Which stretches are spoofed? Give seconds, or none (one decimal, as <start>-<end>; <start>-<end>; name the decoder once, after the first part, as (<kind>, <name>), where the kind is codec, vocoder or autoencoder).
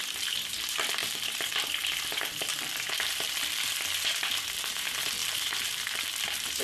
1.0-4.7 (vocoder, BigVGAN v2); 5.2-6.6